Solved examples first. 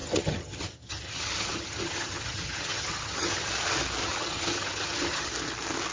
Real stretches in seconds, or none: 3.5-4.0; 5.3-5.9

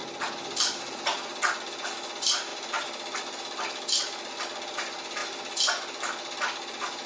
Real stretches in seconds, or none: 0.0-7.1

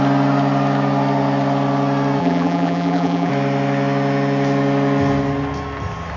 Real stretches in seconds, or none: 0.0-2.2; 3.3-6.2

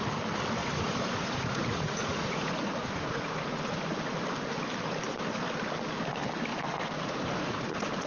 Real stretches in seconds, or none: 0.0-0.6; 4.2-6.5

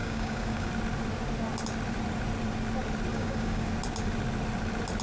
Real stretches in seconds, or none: 0.7-3.1; 3.7-5.0

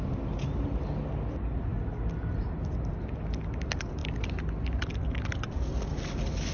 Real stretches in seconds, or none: 0.0-6.5

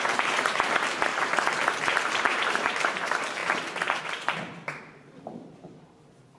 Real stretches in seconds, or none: 1.1-2.1; 3.4-4.0